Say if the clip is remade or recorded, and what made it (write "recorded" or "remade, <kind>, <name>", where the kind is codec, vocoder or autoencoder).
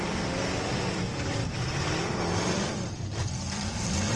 remade, vocoder, BigVGAN v2